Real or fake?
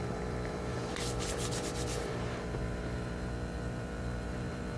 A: fake